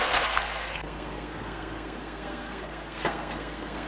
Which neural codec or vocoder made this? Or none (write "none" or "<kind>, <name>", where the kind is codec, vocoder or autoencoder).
codec, SNAC